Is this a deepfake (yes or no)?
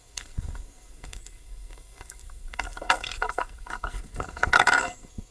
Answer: yes